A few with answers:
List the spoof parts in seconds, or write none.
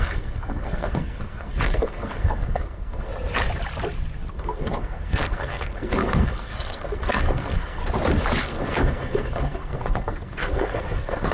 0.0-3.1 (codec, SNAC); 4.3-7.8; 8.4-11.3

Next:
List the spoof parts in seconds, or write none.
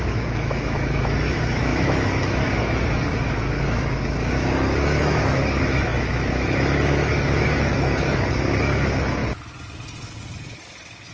0.0-9.2 (autoencoder, DAC-VAE)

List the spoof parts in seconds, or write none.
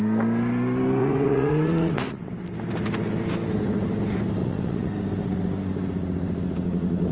1.0-2.3 (vocoder, Vocos); 4.4-4.9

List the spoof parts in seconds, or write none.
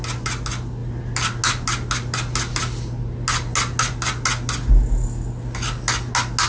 none